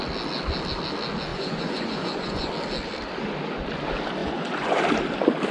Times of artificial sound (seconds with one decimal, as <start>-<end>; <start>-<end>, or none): 1.3-2.5; 4.2-4.8

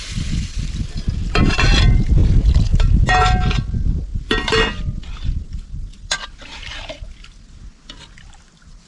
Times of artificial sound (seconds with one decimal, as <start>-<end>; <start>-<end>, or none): none

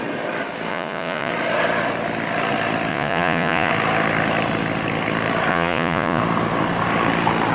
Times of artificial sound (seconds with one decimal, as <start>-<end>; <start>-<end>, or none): 0.7-1.3; 2.9-3.7; 5.5-6.2